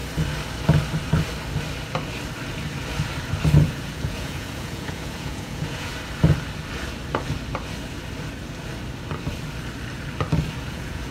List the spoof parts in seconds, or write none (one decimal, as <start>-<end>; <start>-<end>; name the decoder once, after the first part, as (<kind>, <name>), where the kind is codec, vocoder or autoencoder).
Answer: 3.7-5.9 (vocoder, Vocos); 10.7-11.1